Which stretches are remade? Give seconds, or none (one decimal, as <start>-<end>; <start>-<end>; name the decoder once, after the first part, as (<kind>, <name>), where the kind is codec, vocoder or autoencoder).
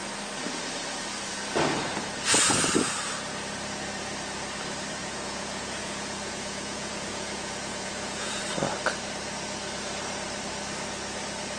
5.0-8.4 (vocoder, Vocos)